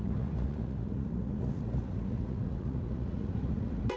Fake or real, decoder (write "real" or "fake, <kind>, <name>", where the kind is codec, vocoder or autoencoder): fake, vocoder, Vocos